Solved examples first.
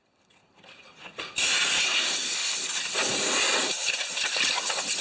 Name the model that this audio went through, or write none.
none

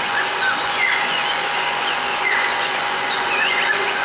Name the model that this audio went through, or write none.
vocoder, Vocos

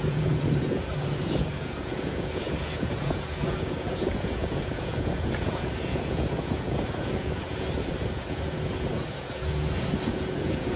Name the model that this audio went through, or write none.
vocoder, Vocos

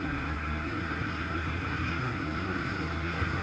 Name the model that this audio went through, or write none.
codec, SNAC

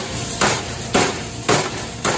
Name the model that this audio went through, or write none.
none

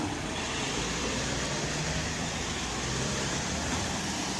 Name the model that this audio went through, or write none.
vocoder, BigVGAN v2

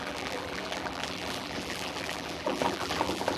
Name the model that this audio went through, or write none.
vocoder, BigVGAN v2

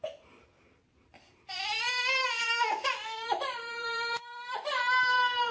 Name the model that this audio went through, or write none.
vocoder, BigVGAN v2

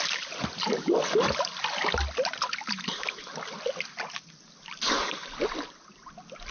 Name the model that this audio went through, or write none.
none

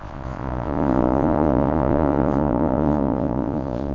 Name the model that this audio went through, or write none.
vocoder, Vocos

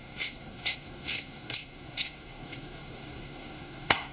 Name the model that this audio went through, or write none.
codec, SNAC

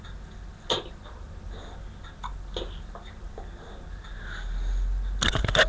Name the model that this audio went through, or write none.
none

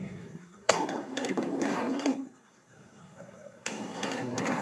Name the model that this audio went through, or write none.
codec, SNAC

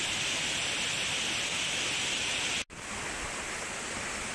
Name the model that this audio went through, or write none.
none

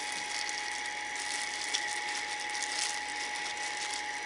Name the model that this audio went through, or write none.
none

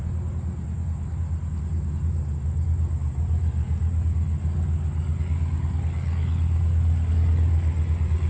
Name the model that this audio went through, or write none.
none